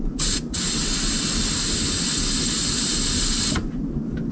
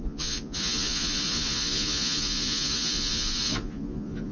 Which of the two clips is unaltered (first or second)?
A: first